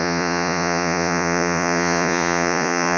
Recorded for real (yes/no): no